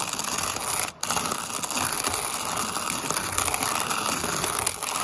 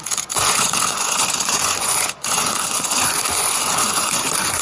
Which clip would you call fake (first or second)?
second